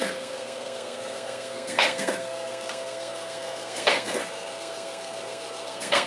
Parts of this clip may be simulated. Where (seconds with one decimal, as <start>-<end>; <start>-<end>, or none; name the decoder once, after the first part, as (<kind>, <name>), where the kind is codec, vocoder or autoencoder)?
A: 0.0-6.1 (codec, SNAC)